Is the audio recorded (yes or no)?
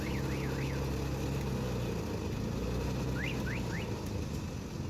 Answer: yes